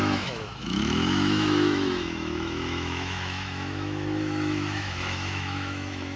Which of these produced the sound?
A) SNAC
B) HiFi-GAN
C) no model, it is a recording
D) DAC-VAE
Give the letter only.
D